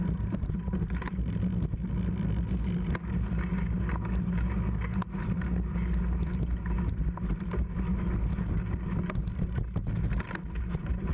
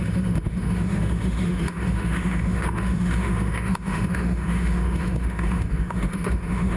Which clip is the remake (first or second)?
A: second